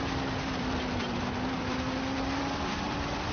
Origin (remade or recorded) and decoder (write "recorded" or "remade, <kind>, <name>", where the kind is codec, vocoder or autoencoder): remade, vocoder, BigVGAN v2